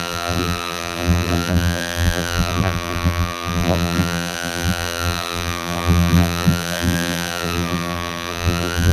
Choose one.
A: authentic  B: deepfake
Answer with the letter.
B